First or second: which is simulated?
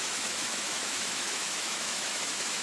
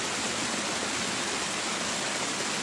first